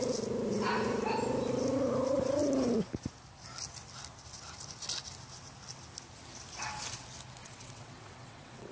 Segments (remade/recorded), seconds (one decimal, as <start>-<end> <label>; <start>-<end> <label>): 0.0-7.4 recorded; 7.4-8.7 remade